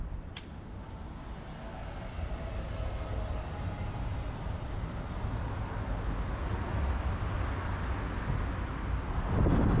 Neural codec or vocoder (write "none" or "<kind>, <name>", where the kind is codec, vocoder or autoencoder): none